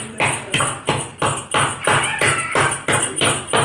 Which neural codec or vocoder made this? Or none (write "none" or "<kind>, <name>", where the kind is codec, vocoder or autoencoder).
none